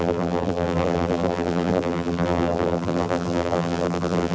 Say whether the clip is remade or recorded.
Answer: remade